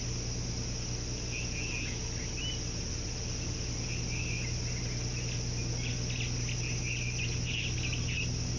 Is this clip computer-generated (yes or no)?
no